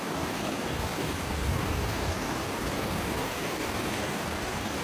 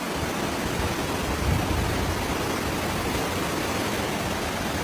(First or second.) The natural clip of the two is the second